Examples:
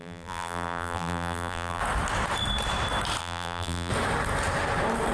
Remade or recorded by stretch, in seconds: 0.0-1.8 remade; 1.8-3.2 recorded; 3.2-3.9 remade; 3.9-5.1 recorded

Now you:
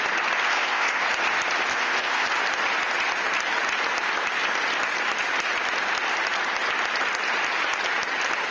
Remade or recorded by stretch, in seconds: 0.0-0.5 recorded; 0.5-1.0 remade; 1.0-1.7 recorded; 1.7-2.3 remade; 2.3-8.5 recorded

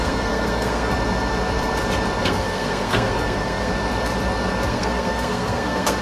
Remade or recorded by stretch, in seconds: 0.0-0.9 remade; 0.9-2.2 recorded; 2.2-3.7 remade; 3.7-4.7 recorded; 4.7-6.0 remade

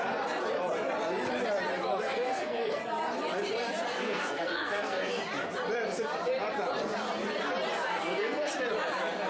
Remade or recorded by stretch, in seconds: 0.0-1.9 recorded; 1.9-2.8 remade; 2.8-3.9 recorded; 3.9-5.2 remade; 5.2-7.9 recorded; 7.9-8.5 remade; 8.5-9.3 recorded

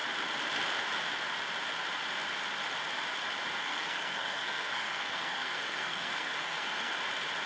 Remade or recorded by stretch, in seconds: 0.0-3.6 recorded; 3.6-6.9 remade; 6.9-7.5 recorded

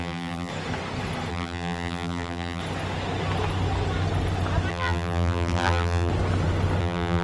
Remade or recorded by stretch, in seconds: 0.0-0.5 remade; 0.5-1.3 recorded; 1.3-2.6 remade; 2.6-4.7 recorded; 4.7-6.1 remade; 6.1-6.8 recorded; 6.8-7.2 remade